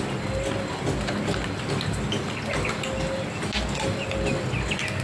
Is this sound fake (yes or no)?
no